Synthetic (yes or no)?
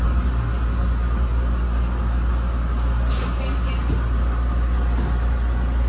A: no